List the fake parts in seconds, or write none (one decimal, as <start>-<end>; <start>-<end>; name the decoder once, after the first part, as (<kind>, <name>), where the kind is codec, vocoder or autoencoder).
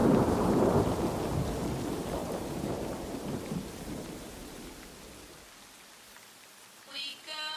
0.0-0.8 (vocoder, BigVGAN v2); 2.2-3.4